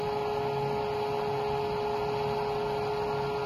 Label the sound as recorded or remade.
recorded